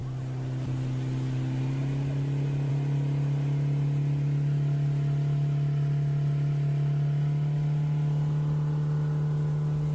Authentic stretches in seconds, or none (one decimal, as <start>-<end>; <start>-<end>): 0.0-9.9